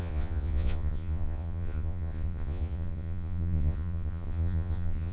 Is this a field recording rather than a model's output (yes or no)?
no